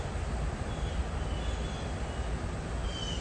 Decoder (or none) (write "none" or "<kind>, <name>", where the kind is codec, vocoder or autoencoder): none